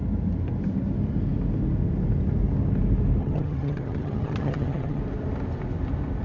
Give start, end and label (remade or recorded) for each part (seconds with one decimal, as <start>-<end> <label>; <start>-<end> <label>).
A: 0.0-3.2 recorded; 3.2-5.0 remade; 5.0-6.2 recorded